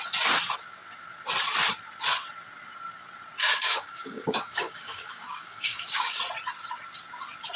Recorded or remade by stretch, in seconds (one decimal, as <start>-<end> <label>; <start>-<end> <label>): 0.0-3.4 recorded; 3.4-6.2 remade; 6.2-7.6 recorded